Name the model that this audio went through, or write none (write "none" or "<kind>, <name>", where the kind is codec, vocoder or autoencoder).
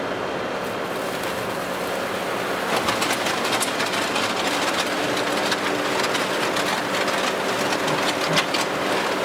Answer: none